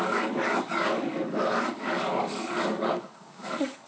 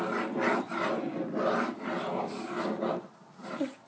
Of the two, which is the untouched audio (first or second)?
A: second